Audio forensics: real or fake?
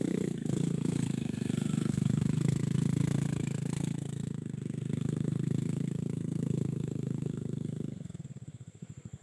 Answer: fake